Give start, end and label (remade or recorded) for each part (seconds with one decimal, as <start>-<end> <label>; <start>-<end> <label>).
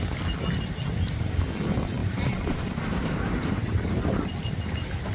0.0-2.0 recorded; 2.0-4.0 remade; 4.0-5.1 recorded